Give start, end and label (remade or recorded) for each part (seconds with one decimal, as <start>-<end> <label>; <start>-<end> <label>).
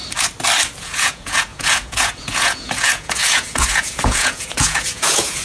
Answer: 0.0-0.8 recorded; 0.8-5.4 remade